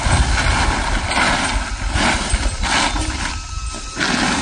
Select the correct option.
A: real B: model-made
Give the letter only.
A